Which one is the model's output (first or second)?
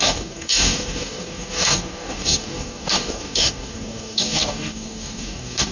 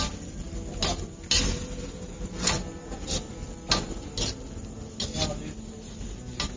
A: first